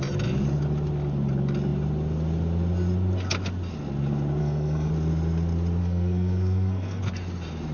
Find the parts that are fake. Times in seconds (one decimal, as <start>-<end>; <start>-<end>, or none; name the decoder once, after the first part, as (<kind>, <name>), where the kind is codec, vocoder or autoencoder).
4.4-4.9 (codec, SNAC); 5.8-7.0